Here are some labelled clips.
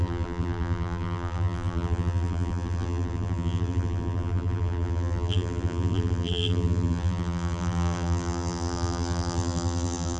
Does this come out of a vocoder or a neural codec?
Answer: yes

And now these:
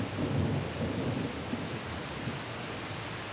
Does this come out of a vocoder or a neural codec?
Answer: no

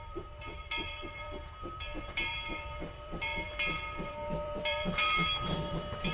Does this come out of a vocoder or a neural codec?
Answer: yes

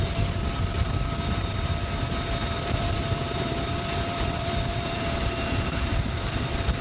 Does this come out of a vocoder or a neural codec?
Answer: yes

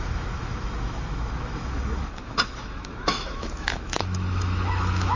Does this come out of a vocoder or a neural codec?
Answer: yes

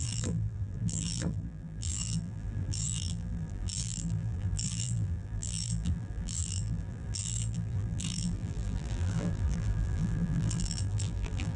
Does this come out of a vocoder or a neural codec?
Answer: yes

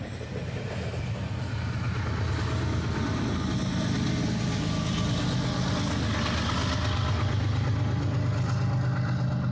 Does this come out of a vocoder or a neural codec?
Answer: no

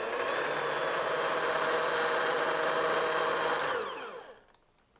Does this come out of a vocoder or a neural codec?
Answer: no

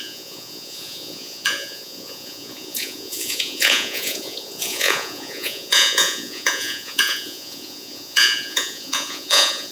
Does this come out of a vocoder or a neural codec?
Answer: yes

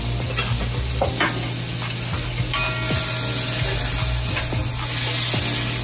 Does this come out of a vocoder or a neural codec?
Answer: no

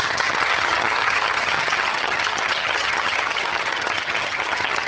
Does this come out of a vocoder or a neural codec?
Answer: yes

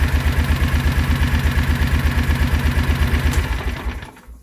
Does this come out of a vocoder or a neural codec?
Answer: no